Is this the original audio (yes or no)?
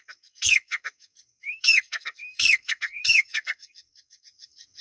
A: no